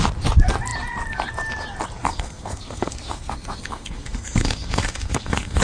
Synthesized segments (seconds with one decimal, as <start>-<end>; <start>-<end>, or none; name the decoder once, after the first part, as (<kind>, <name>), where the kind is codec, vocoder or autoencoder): 2.0-5.6 (codec, SNAC)